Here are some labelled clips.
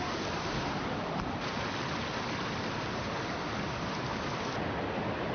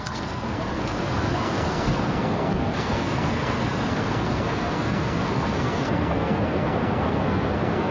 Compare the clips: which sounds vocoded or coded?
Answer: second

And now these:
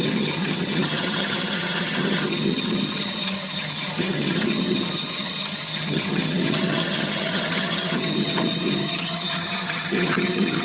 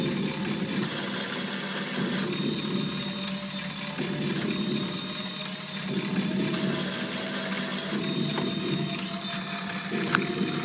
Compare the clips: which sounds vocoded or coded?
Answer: first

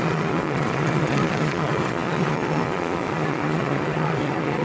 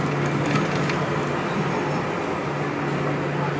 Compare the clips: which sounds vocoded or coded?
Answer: first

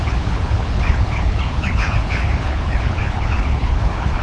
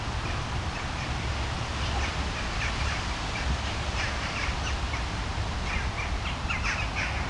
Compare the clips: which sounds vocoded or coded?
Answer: first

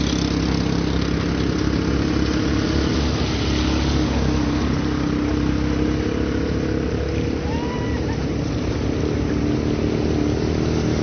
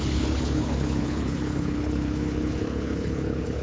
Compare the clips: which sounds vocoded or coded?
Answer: second